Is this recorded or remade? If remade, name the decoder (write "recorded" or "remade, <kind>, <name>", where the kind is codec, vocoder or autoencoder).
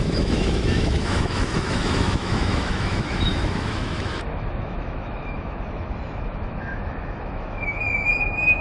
remade, autoencoder, DAC-VAE